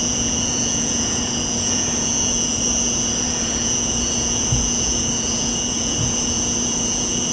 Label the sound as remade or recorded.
remade